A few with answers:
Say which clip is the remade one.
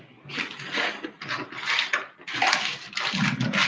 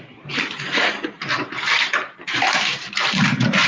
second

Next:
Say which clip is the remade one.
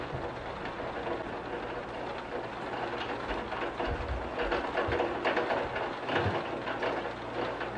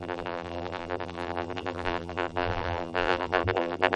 second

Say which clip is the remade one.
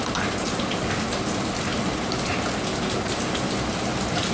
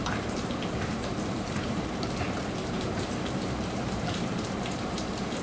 second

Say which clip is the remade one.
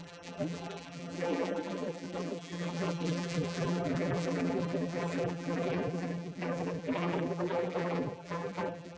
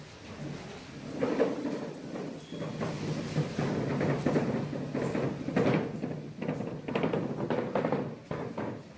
first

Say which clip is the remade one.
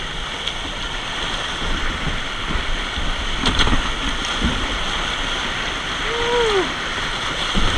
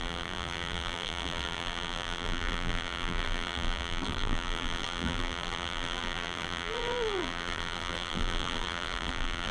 second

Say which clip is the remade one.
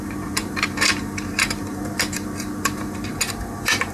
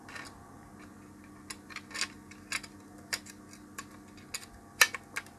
first